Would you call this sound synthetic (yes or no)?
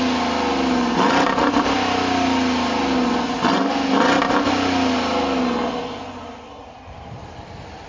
no